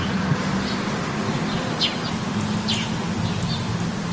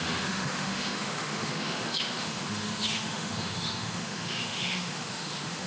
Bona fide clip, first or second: first